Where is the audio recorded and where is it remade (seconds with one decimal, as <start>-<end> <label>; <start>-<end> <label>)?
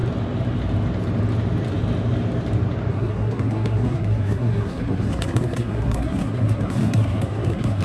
0.0-2.9 recorded; 2.9-7.8 remade